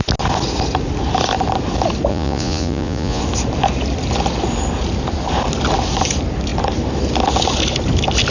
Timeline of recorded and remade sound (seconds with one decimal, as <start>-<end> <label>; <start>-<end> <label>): 0.0-2.1 recorded; 2.1-3.2 remade; 3.2-8.3 recorded